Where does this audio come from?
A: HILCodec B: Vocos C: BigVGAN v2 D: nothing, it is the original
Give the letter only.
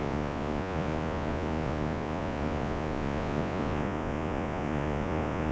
B